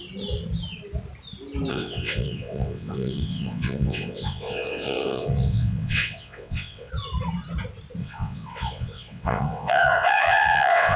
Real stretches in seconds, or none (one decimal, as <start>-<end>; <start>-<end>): 0.0-1.7; 6.9-8.0